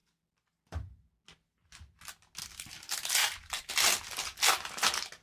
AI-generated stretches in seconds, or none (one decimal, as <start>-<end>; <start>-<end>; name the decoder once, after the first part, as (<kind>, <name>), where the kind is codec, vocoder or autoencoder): 3.2-3.7 (vocoder, BigVGAN v2)